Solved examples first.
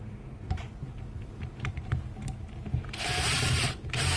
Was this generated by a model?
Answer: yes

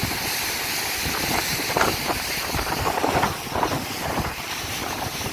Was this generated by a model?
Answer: yes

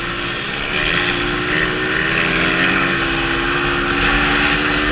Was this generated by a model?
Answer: no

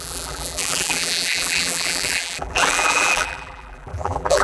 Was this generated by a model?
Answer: yes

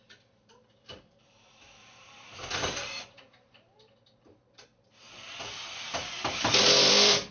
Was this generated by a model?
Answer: yes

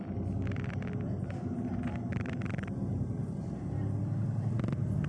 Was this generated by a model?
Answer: no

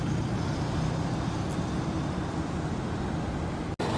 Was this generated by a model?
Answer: no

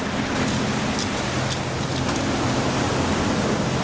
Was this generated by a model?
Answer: no